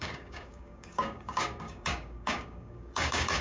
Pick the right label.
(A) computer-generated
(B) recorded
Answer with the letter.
A